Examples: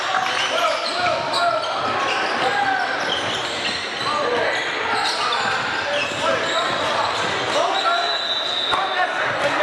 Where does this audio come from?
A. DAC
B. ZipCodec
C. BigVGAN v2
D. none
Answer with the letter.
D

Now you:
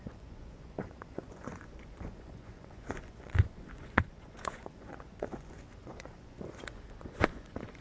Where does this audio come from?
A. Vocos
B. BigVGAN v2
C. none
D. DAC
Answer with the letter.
A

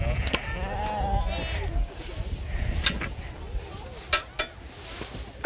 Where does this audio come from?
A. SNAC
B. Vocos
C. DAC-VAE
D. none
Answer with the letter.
D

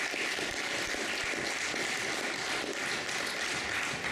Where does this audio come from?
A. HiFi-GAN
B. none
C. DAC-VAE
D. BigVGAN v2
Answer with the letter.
B